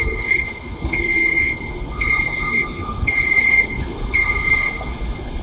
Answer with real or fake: fake